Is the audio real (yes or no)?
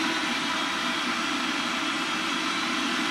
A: yes